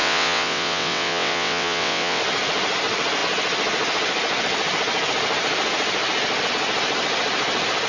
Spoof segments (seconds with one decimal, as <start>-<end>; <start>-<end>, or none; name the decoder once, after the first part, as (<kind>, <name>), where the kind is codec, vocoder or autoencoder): 0.0-2.2 (vocoder, WaveNeXt)